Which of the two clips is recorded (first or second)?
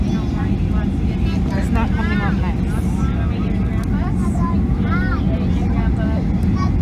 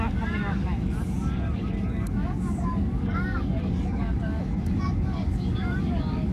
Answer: first